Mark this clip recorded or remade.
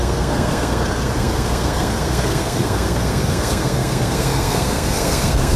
remade